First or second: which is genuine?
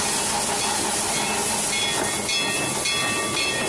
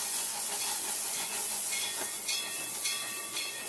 first